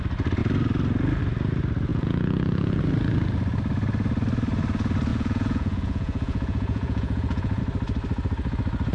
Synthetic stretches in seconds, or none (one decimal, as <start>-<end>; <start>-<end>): 1.9-2.8; 5.1-7.6